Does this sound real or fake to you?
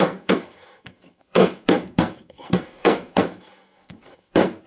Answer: fake